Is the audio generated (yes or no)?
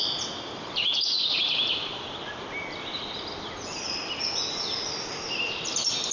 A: no